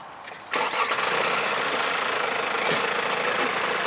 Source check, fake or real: real